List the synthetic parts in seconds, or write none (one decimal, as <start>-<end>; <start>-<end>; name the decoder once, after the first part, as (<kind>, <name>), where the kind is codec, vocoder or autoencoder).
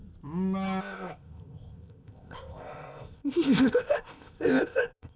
0.8-5.2 (codec, ZipCodec)